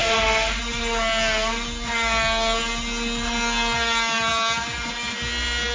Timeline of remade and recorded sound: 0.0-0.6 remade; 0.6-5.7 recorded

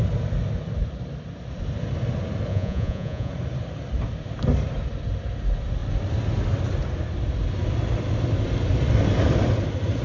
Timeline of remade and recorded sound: 0.0-2.5 recorded; 2.5-3.3 remade; 3.3-10.0 recorded

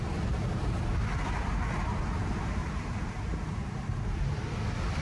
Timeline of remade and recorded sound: 0.0-2.6 recorded; 2.6-4.5 remade; 4.5-5.0 recorded

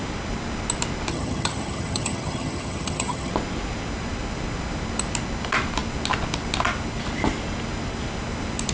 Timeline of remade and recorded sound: 0.0-1.1 recorded; 1.1-3.3 remade; 3.3-8.7 recorded

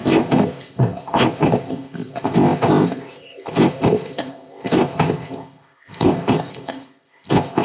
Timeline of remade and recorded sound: 0.0-7.6 remade